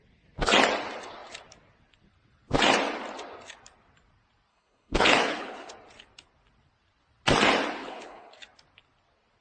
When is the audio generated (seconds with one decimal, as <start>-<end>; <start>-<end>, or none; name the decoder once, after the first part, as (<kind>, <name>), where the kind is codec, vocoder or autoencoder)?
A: 4.5-5.7 (codec, HILCodec); 7.8-8.3